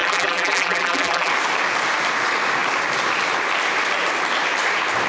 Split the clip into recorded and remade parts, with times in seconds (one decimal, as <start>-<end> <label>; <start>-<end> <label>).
0.0-1.3 remade; 1.3-5.1 recorded

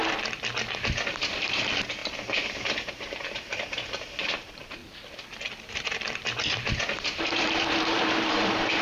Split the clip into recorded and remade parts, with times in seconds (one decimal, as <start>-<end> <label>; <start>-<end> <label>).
0.0-1.1 recorded; 1.1-2.0 remade; 2.0-2.9 recorded; 2.9-4.8 remade; 4.8-5.7 recorded; 5.7-8.8 remade